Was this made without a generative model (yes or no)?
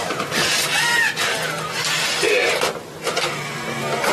no